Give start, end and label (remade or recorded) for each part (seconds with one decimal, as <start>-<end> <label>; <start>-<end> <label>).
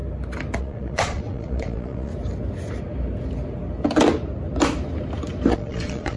0.0-0.6 recorded; 0.6-2.1 remade; 2.1-5.5 recorded; 5.5-6.2 remade